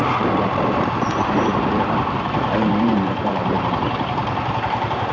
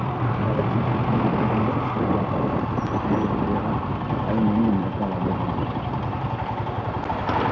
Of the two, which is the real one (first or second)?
second